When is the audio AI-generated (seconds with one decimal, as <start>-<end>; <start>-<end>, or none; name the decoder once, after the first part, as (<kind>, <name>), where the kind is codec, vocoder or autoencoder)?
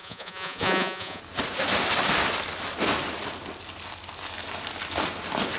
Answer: 0.0-1.2 (vocoder, Vocos)